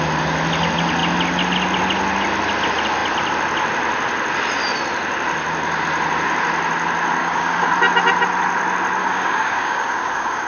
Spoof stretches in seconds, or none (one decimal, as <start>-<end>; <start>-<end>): 7.2-7.7; 9.0-10.5